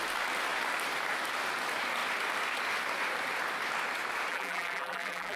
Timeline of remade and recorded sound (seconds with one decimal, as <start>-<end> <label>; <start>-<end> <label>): 0.0-4.3 recorded; 4.3-5.4 remade